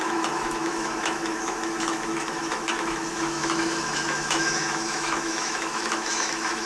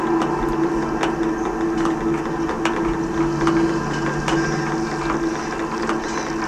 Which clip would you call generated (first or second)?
first